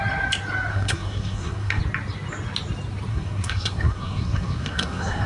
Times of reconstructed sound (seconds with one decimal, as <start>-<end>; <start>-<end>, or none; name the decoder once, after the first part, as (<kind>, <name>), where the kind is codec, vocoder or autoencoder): 0.7-1.8 (codec, SNAC); 3.1-5.3